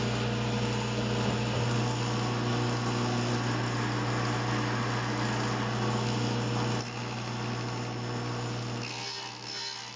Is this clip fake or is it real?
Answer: real